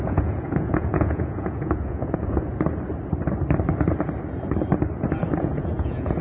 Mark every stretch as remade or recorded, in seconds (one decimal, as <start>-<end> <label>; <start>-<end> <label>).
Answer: 0.0-2.5 remade; 2.5-5.4 recorded; 5.4-6.2 remade